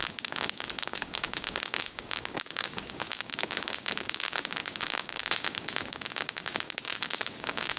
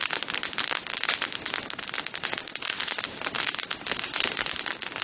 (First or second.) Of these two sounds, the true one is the second